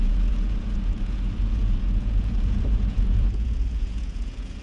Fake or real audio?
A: fake